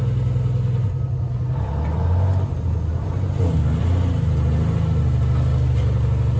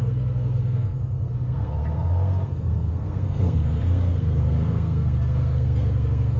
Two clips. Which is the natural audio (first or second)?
first